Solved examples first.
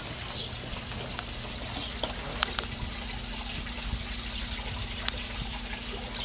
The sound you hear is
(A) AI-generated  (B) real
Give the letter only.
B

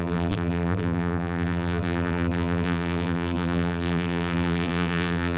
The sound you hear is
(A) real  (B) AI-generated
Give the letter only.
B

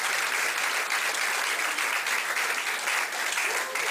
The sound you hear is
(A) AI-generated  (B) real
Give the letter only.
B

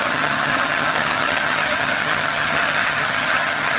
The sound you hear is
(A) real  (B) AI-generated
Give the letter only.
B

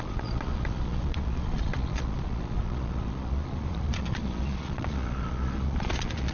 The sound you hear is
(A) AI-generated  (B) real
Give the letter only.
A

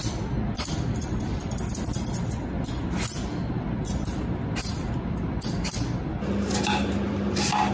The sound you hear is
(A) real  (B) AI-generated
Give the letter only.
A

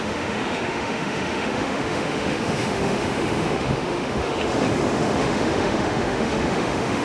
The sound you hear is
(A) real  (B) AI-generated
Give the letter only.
B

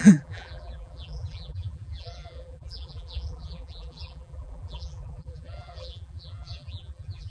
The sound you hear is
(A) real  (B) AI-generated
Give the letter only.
B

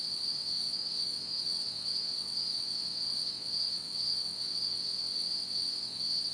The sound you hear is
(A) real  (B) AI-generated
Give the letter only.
B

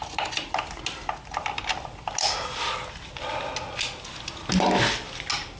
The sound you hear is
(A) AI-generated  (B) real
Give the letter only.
B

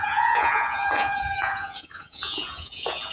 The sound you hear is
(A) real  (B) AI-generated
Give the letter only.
B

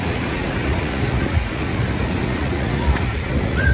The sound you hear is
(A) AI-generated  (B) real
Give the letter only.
A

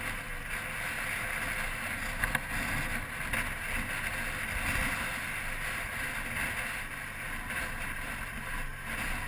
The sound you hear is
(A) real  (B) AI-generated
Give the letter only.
A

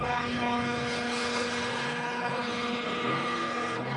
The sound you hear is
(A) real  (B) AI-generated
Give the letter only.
B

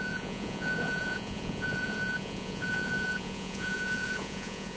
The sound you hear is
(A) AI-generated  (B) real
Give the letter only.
A